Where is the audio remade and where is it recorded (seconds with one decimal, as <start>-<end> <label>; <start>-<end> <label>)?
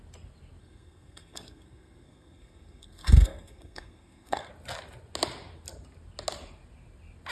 0.0-0.6 recorded; 0.6-4.5 remade; 4.5-7.3 recorded